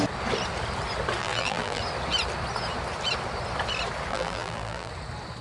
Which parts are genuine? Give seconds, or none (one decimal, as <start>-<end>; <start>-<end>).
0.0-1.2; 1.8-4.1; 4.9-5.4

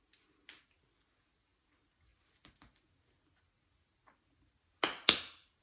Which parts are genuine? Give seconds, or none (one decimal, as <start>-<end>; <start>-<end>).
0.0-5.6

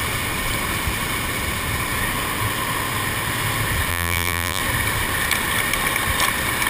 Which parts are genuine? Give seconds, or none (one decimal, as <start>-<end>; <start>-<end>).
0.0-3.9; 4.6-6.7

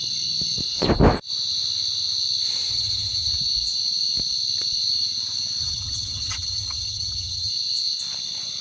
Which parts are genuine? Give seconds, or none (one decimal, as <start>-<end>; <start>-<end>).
0.0-2.7; 3.3-5.6; 7.5-8.6

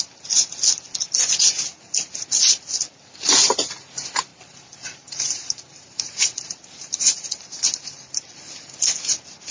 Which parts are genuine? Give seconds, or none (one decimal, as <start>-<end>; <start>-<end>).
0.0-4.3; 8.2-9.5